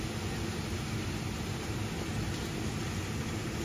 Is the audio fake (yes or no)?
no